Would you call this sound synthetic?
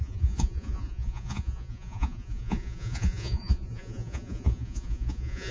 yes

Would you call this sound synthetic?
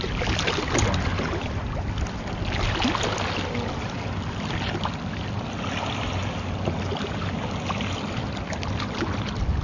no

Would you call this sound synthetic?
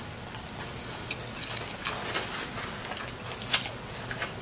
no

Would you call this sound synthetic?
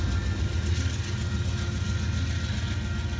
no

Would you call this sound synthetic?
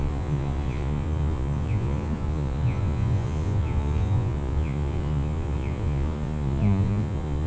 yes